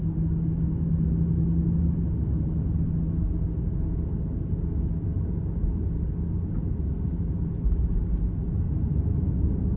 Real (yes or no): yes